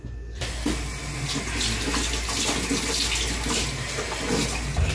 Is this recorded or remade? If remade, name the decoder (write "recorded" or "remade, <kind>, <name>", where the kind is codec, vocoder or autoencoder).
recorded